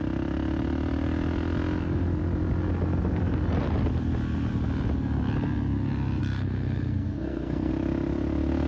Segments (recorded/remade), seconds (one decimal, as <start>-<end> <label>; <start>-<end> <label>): 0.0-6.2 recorded; 6.2-7.7 remade; 7.7-8.7 recorded